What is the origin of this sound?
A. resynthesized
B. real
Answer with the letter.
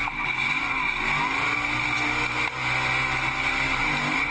B